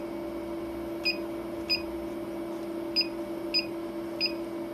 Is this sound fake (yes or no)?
no